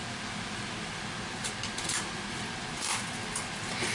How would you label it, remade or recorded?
recorded